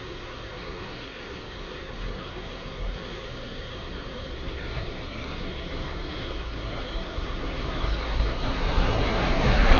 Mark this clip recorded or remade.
remade